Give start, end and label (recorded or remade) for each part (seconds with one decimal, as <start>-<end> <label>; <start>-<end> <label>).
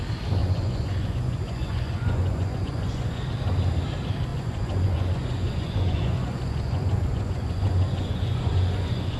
0.0-0.4 recorded; 0.4-3.2 remade; 3.2-4.3 recorded; 4.3-9.2 remade